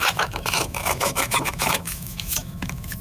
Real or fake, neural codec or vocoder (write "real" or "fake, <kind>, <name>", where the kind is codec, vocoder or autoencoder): fake, autoencoder, DAC-VAE